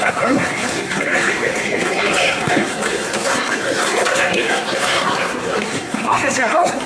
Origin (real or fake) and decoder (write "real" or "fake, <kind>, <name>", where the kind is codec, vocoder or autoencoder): fake, codec, SNAC